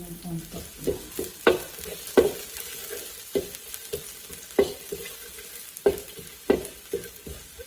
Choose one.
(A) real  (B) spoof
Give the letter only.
A